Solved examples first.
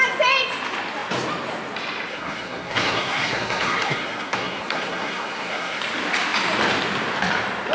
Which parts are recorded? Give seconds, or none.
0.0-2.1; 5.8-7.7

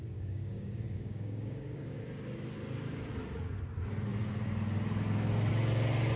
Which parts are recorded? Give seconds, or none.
2.0-6.2